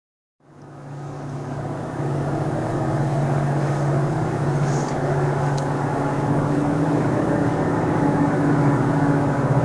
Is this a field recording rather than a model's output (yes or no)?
no